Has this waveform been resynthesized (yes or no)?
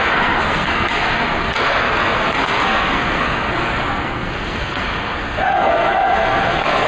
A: yes